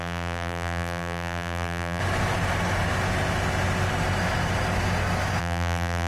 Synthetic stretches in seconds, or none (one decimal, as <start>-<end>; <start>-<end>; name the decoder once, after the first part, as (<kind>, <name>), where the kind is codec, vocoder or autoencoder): 0.0-2.0 (vocoder, BigVGAN v2); 5.4-6.1